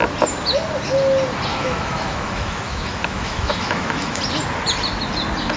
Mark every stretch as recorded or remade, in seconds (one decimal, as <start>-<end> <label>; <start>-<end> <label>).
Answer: 0.0-1.5 recorded; 1.5-4.2 remade; 4.2-5.6 recorded